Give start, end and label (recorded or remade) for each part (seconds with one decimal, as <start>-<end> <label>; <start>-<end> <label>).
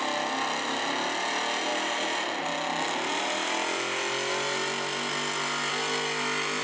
0.0-6.6 recorded